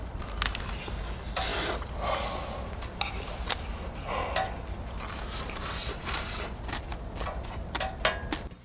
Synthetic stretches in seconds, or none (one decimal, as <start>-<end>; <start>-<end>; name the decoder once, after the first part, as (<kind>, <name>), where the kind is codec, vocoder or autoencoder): none